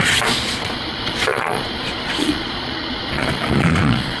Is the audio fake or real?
fake